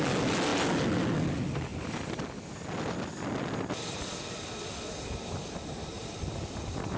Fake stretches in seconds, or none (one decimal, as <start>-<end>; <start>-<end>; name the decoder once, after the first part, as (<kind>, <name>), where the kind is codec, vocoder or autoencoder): none

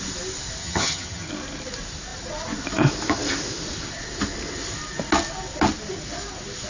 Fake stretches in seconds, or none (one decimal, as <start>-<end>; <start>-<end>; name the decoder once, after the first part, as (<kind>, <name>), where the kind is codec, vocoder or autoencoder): 0.6-1.3 (vocoder, HiFi-GAN)

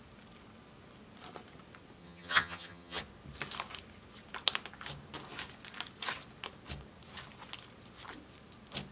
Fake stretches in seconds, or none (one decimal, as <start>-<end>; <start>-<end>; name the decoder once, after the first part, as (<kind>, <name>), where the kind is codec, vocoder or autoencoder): 2.0-3.0 (vocoder, HiFi-GAN)

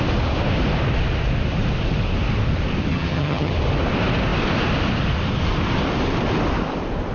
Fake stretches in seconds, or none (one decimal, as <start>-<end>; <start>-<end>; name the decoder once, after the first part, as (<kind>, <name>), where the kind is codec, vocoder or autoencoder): 2.9-3.5 (vocoder, HiFi-GAN)

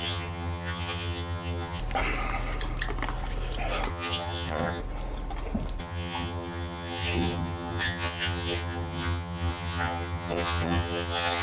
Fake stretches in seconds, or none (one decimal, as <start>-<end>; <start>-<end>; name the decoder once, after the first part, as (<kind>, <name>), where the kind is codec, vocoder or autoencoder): 0.0-1.8 (vocoder, HiFi-GAN); 3.9-4.8; 5.8-11.4

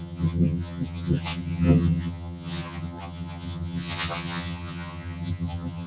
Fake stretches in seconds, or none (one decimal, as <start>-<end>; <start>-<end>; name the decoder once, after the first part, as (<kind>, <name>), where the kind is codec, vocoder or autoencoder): 0.0-5.9 (vocoder, HiFi-GAN)

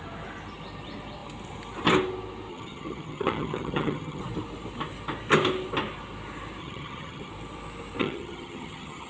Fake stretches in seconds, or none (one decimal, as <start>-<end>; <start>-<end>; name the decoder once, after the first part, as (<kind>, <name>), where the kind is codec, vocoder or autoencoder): 2.5-4.2 (vocoder, HiFi-GAN); 6.6-7.3; 8.0-9.1

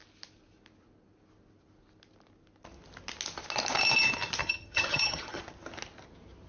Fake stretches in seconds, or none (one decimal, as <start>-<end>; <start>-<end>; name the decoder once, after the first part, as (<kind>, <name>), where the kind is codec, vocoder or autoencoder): 4.4-5.4 (vocoder, HiFi-GAN)